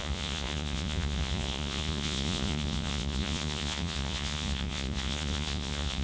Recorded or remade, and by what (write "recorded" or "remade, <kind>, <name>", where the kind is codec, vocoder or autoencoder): remade, vocoder, Vocos